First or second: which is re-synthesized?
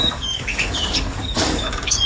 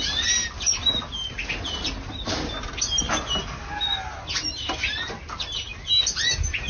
first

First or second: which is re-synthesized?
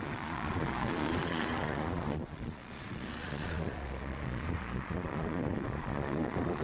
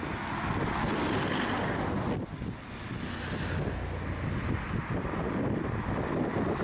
first